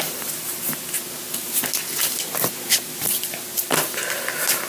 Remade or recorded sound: recorded